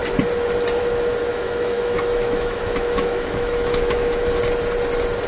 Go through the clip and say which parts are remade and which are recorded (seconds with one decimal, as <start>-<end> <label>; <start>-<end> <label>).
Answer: 0.0-1.3 recorded; 1.3-4.4 remade; 4.4-5.3 recorded